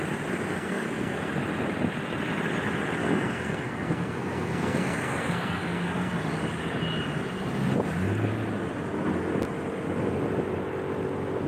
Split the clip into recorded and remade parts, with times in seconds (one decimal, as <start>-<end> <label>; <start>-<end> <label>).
0.0-0.5 recorded; 0.5-1.3 remade; 1.3-3.0 recorded; 3.0-6.1 remade; 6.1-11.5 recorded